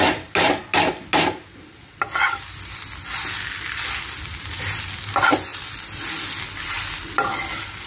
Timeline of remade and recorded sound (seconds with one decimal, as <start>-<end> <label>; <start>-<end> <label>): 0.0-7.9 recorded